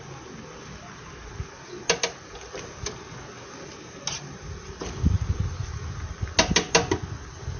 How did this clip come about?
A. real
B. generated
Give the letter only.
A